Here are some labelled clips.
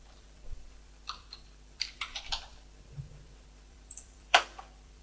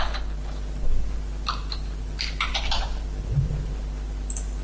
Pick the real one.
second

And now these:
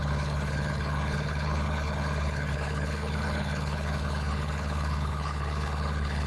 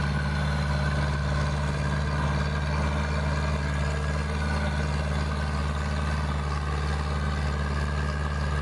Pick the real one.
second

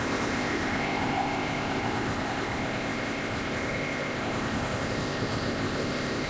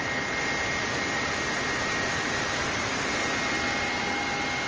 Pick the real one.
second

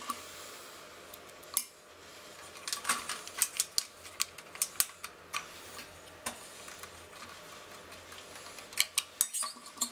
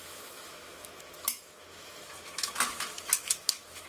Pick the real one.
first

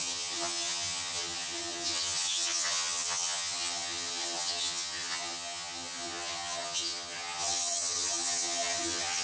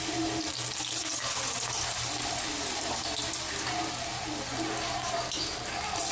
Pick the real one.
second